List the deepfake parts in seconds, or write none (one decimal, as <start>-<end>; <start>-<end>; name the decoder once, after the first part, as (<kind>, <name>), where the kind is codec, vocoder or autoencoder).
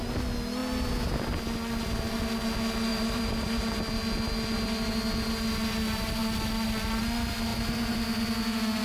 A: 2.9-3.8 (vocoder, BigVGAN v2)